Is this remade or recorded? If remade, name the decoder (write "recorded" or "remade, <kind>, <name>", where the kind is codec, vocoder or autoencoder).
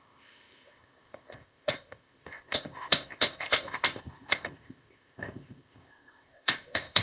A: remade, codec, ZipCodec